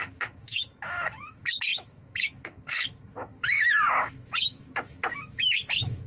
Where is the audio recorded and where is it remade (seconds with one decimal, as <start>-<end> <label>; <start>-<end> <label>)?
0.0-6.1 remade